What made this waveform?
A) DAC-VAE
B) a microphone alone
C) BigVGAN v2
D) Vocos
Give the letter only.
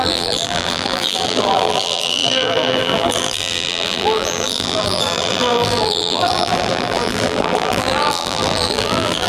C